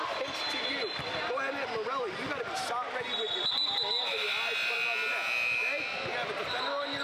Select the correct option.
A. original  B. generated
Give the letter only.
A